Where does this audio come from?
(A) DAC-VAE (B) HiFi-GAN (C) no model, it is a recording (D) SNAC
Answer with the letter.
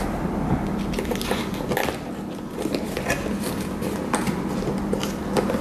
C